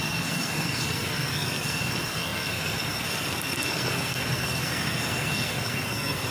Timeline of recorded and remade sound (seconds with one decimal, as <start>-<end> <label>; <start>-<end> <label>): 0.0-6.3 remade